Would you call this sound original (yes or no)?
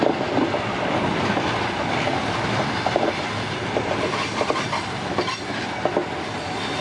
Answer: yes